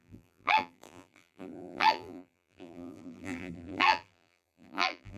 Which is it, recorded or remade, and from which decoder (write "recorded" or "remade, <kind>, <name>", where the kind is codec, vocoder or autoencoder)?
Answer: remade, vocoder, BigVGAN v2